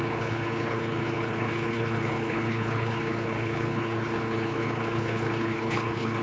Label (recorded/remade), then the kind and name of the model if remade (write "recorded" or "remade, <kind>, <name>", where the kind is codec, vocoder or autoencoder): remade, codec, HILCodec